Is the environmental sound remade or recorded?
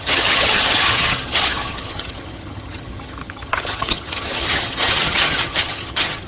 remade